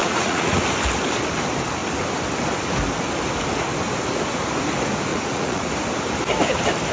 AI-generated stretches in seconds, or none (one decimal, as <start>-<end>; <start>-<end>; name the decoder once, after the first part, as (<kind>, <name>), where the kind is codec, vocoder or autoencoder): 0.0-0.6 (vocoder, Vocos); 5.1-5.7